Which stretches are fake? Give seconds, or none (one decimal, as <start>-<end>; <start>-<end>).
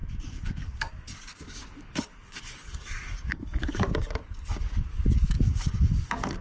0.0-6.4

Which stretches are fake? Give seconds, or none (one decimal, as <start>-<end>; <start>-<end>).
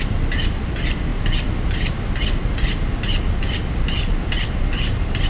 none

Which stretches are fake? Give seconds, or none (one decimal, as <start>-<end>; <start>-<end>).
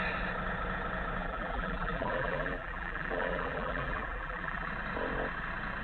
1.2-4.7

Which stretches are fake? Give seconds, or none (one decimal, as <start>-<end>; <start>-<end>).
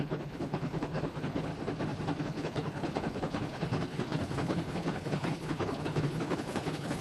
0.0-1.5; 2.2-7.0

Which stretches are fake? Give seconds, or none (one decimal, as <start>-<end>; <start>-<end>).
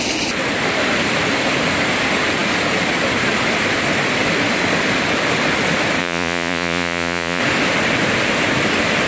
6.0-7.4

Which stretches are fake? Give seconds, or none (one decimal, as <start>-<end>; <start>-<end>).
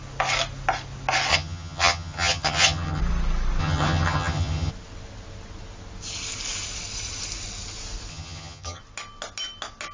1.3-3.0; 3.6-4.7; 8.1-8.8